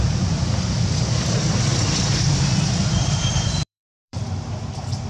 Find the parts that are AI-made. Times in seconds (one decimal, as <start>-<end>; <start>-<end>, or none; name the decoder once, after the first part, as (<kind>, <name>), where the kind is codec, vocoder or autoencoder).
1.7-4.5 (vocoder, BigVGAN v2)